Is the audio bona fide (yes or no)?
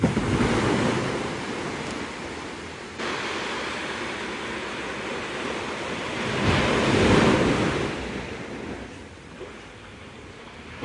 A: yes